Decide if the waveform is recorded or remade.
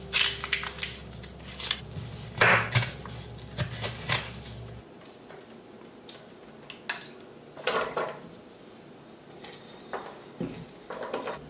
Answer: recorded